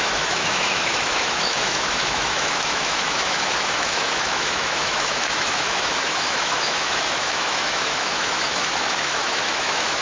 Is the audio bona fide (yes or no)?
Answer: no